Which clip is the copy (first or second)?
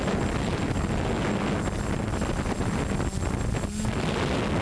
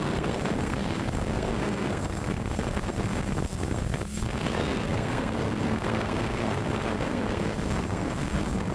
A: second